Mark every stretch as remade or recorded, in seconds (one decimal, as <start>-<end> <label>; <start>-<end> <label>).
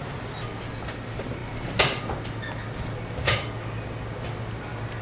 0.0-5.0 recorded